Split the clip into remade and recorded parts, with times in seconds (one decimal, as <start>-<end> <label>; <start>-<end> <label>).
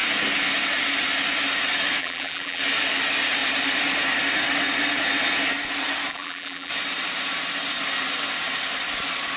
0.0-2.0 recorded; 2.0-2.6 remade; 2.6-6.1 recorded; 6.1-6.7 remade; 6.7-9.4 recorded